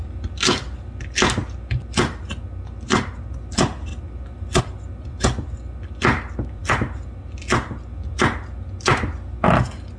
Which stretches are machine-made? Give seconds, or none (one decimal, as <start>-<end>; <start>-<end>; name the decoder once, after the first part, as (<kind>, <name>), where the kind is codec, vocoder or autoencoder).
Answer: none